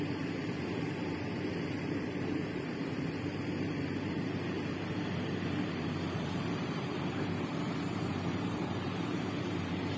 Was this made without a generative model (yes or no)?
no